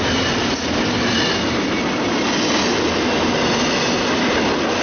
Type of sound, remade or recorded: recorded